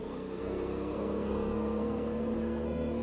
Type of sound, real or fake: fake